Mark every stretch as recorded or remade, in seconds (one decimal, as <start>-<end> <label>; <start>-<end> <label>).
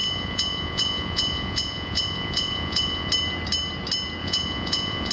0.0-3.1 remade; 3.1-4.2 recorded; 4.2-5.1 remade